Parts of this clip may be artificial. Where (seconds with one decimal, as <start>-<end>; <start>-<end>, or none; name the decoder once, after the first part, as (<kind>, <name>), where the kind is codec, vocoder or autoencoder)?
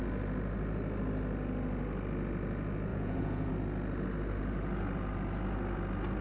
2.9-3.5 (vocoder, Vocos)